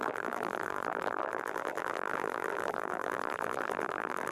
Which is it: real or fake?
fake